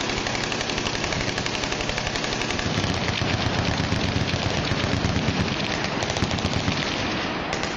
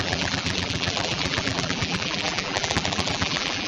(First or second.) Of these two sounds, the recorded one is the first